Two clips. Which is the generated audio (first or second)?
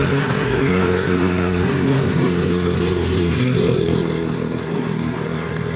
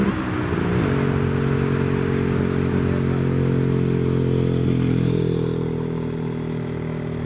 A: first